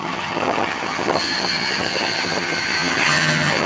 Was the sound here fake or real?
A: fake